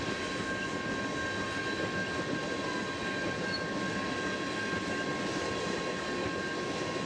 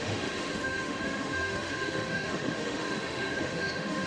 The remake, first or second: second